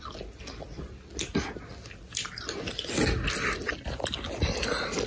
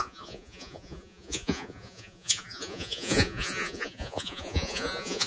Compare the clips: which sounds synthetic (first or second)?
second